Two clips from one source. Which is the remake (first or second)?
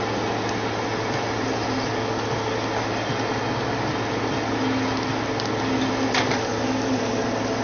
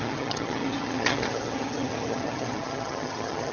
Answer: second